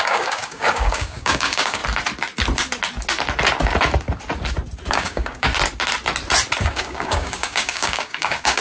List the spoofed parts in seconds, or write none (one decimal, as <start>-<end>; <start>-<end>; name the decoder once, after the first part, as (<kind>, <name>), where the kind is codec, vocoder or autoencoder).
0.0-1.8 (codec, DAC); 4.9-5.5; 6.6-8.6